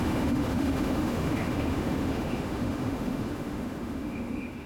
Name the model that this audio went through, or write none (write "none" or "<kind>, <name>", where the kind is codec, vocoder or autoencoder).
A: autoencoder, DAC-VAE